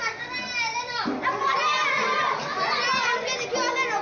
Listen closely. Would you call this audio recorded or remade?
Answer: recorded